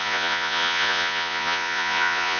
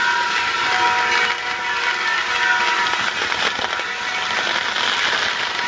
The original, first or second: second